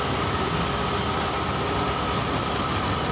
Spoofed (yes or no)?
no